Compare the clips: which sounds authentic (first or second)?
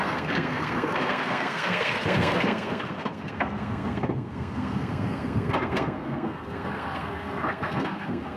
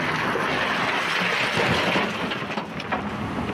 second